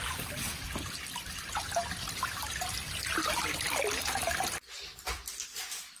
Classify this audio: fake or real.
real